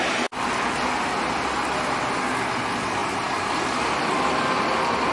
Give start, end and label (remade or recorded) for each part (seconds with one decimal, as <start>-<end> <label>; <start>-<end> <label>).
0.0-3.0 recorded; 3.0-3.8 remade; 3.8-5.1 recorded